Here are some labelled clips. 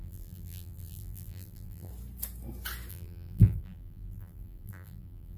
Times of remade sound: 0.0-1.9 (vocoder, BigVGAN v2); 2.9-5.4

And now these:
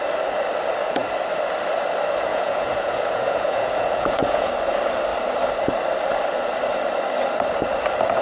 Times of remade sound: 2.3-4.5 (vocoder, Vocos)

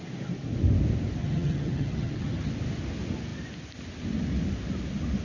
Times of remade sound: 1.2-2.5 (vocoder, HiFi-GAN)

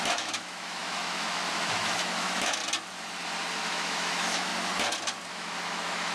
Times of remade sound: 0.0-2.6 (autoencoder, DAC-VAE); 3.6-4.5; 5.3-6.1

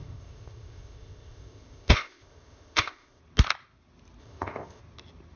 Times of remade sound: 0.0-3.2 (codec, ZipCodec); 4.2-4.8